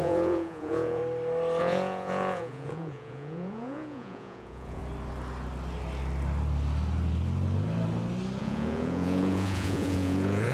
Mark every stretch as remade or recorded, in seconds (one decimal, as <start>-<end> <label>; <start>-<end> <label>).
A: 0.0-1.0 remade; 1.0-1.6 recorded; 1.6-4.8 remade; 4.8-8.4 recorded; 8.4-10.5 remade